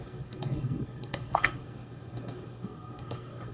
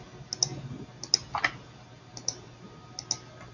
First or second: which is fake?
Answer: first